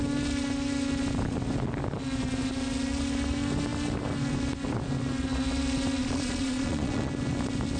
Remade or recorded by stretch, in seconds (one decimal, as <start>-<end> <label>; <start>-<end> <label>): 0.0-6.0 recorded; 6.0-7.1 remade; 7.1-7.8 recorded